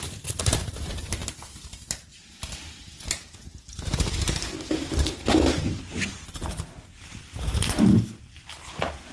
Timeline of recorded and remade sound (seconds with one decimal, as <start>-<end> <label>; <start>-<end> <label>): 0.0-9.1 recorded